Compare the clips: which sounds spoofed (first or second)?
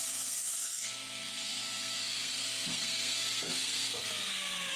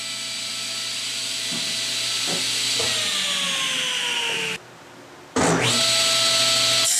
first